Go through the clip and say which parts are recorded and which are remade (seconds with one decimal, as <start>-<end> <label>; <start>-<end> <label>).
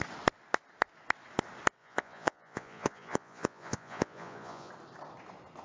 0.0-1.8 recorded; 1.8-4.7 remade; 4.7-5.6 recorded